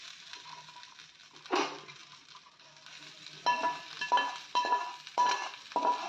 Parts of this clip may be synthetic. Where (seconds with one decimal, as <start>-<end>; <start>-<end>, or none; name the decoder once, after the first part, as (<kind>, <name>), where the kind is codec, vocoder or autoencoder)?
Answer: none